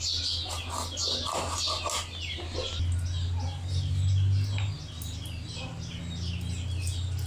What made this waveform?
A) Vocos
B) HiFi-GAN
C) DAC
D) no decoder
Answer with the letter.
D